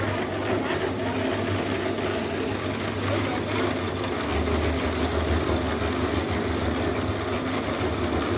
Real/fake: real